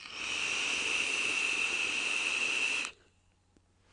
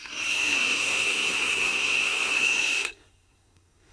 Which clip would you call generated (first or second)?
second